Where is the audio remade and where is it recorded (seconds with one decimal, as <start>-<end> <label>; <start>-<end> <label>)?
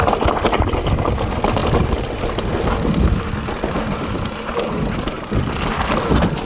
0.0-6.4 recorded